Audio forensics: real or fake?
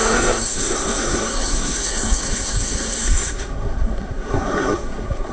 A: fake